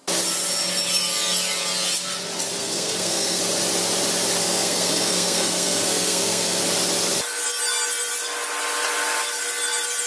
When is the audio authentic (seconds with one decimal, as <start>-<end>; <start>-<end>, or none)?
0.0-2.6; 3.4-4.4; 6.6-10.1